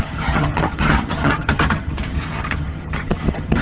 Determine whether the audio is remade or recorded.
remade